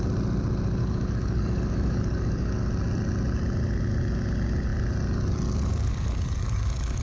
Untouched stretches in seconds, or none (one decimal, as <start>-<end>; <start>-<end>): 0.0-0.8; 2.7-5.7

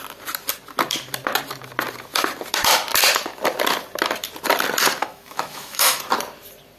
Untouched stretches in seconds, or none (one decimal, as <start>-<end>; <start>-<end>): 0.0-5.0; 6.0-6.8

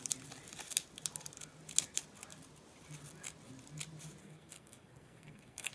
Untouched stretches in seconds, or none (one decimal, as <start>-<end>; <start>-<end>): 0.0-4.2